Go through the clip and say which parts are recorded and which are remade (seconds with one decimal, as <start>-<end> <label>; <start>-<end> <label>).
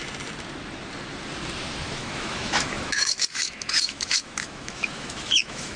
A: 0.0-2.0 recorded; 2.0-5.8 remade